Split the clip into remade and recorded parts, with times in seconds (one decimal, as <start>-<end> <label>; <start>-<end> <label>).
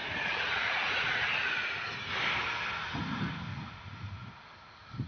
0.0-1.9 remade; 1.9-3.5 recorded; 3.5-4.3 remade; 4.3-5.1 recorded